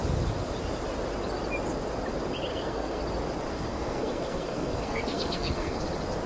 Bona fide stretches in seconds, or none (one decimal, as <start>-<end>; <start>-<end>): 0.0-2.5; 3.0-3.5; 5.8-6.3